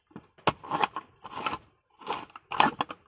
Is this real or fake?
real